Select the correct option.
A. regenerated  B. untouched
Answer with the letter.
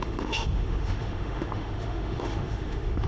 A